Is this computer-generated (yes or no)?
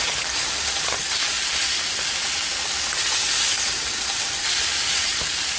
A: no